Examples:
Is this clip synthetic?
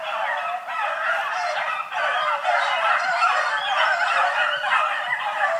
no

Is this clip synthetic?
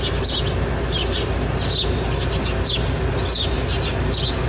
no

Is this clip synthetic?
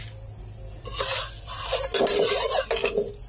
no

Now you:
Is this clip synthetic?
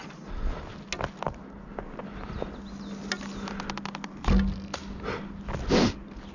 no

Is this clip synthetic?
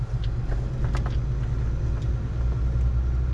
no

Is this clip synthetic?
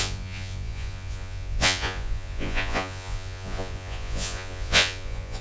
yes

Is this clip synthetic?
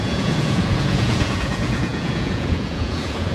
yes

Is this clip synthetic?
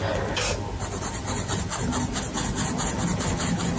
no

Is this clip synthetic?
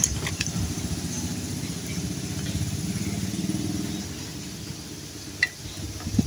no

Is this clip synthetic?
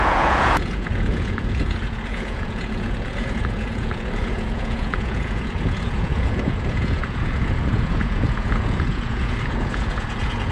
yes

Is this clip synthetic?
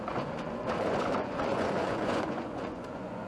yes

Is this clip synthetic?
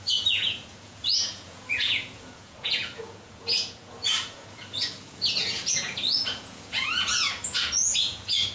yes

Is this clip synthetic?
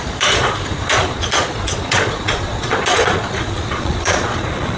yes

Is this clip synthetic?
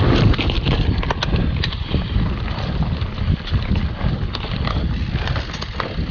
no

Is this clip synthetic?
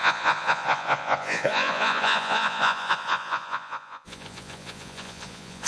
yes